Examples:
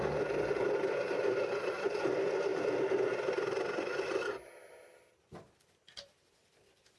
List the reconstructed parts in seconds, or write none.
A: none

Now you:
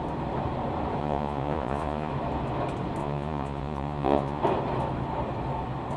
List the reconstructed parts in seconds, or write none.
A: 1.0-2.1 (vocoder, Vocos); 3.0-4.4

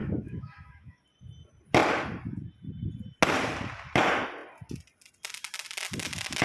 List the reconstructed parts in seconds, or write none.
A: 0.0-1.0 (autoencoder, DAC-VAE)